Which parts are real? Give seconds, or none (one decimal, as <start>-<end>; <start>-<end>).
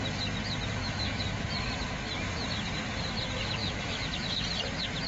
0.0-0.8; 1.5-3.6; 4.4-5.1